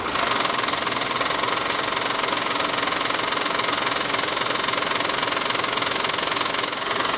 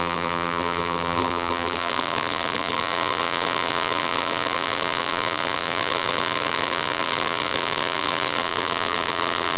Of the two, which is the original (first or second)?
first